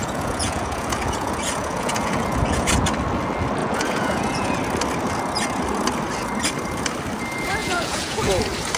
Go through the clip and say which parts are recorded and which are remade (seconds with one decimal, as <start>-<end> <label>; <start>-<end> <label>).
0.0-2.7 remade; 2.7-3.6 recorded; 3.6-4.6 remade; 4.6-7.6 recorded; 7.6-8.4 remade; 8.4-8.8 recorded